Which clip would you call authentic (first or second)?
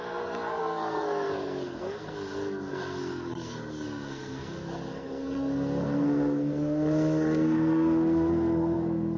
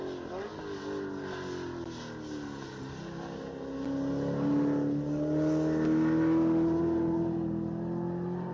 second